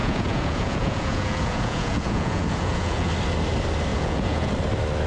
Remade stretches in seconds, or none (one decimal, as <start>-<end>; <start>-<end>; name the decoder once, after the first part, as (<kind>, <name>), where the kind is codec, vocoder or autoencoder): 0.0-3.1 (vocoder, Vocos); 3.9-4.5